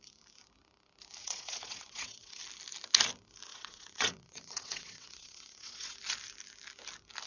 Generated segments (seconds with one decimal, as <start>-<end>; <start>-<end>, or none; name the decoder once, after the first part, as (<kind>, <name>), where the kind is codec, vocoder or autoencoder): 1.2-2.4 (vocoder, WaveNeXt); 3.5-6.0